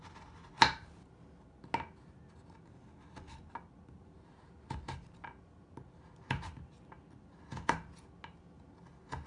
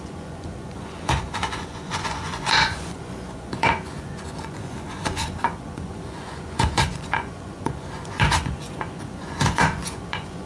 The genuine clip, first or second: first